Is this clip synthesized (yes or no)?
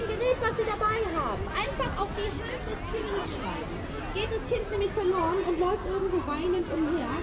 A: no